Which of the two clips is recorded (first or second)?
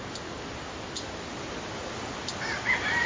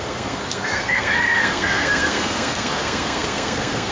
first